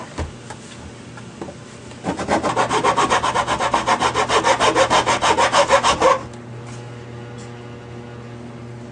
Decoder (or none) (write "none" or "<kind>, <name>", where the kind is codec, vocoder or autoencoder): none